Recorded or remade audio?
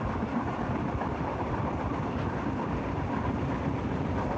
recorded